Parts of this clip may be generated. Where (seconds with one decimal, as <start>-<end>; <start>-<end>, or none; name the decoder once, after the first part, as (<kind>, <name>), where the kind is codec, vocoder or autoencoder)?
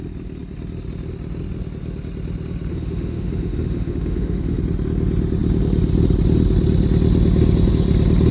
2.7-4.6 (autoencoder, DAC-VAE)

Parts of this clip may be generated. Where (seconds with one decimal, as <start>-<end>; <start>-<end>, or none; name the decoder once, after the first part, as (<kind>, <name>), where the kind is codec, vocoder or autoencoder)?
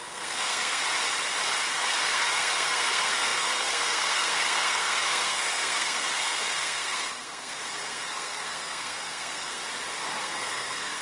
0.0-0.8 (codec, SNAC); 1.7-9.6; 10.2-11.0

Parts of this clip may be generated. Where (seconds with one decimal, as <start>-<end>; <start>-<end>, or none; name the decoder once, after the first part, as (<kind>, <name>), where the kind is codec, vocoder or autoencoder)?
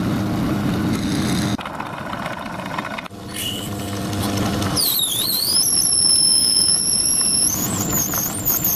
6.3-7.7 (vocoder, Vocos)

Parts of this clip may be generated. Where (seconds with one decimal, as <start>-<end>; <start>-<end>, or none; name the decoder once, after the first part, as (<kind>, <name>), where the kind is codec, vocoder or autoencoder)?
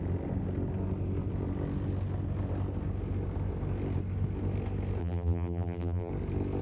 5.0-6.1 (vocoder, BigVGAN v2)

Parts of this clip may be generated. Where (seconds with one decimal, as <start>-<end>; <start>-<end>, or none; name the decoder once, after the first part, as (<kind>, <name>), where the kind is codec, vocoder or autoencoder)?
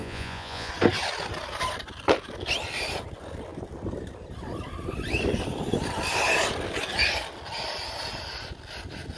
0.0-0.7 (vocoder, Vocos)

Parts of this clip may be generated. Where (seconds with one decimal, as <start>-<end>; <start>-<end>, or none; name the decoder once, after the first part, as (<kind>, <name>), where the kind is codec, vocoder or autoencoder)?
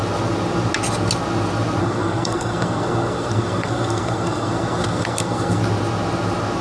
1.8-5.6 (codec, SNAC)